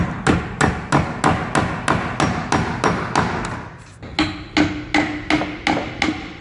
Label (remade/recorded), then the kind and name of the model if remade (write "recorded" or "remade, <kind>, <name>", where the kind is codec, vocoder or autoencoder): recorded